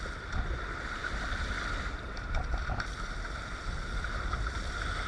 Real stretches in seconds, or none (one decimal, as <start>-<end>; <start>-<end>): 0.0-1.0; 4.1-5.1